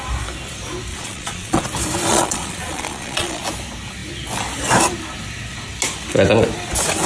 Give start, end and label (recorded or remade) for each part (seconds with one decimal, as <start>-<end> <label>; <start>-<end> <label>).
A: 0.0-0.9 recorded; 0.9-1.6 remade; 1.6-2.1 recorded; 2.1-3.4 remade; 3.4-7.1 recorded